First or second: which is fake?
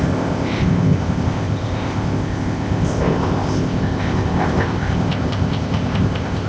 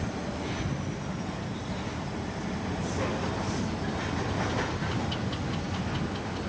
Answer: first